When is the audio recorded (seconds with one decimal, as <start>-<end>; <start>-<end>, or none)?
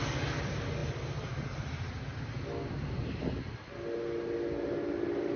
0.0-5.4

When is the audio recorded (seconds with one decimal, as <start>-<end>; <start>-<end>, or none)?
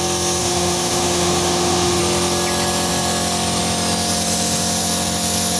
0.0-0.4; 2.0-5.6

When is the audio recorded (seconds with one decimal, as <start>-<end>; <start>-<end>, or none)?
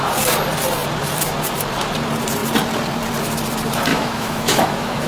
0.0-3.9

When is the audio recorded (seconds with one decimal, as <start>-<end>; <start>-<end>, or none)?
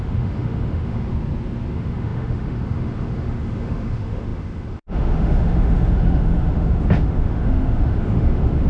1.1-1.7